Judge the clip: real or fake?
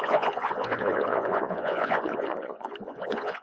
fake